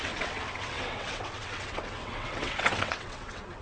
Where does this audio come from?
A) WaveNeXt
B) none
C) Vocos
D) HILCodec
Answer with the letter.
A